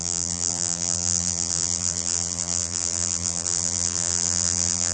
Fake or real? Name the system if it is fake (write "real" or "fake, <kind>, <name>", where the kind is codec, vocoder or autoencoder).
fake, vocoder, BigVGAN v2